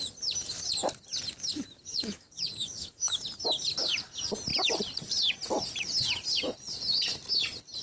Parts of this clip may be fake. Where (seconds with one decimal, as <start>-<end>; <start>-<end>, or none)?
1.9-3.2